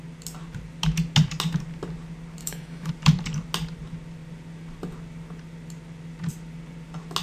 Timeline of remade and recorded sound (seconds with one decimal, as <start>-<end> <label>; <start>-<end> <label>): 0.0-2.4 recorded; 2.4-2.9 remade; 2.9-7.2 recorded